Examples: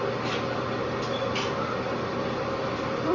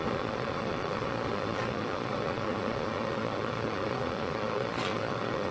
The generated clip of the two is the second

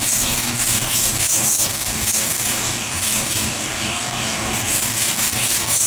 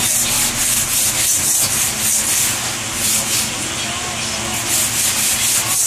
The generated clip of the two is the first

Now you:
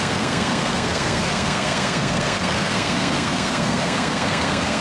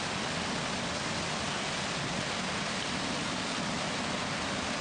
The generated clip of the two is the first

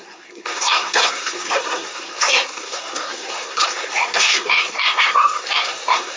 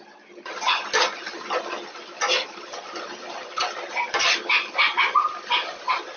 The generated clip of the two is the first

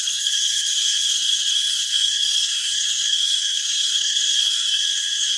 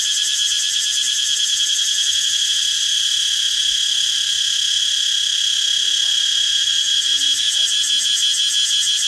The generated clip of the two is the first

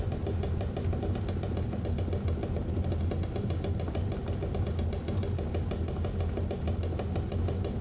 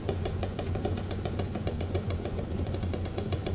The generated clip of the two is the second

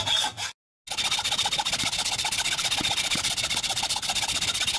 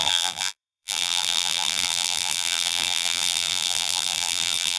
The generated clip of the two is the second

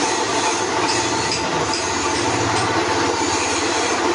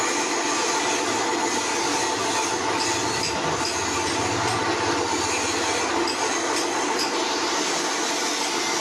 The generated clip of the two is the first